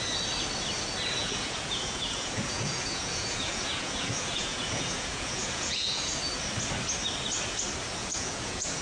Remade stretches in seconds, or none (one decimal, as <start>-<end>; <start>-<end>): 1.2-6.1; 8.0-8.8